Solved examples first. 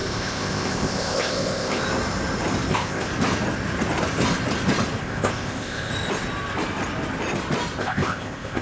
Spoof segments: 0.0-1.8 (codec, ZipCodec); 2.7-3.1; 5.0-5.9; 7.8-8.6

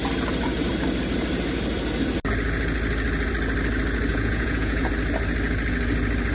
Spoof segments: 4.1-4.9 (vocoder, Vocos)

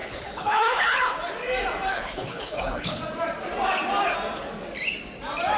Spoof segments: 0.0-1.0 (codec, HILCodec); 1.9-3.0

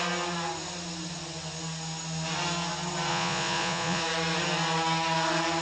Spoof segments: 3.1-4.0 (vocoder, Vocos)